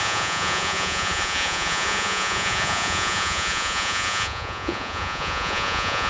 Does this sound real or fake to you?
fake